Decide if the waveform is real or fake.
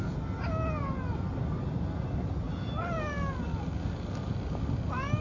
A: real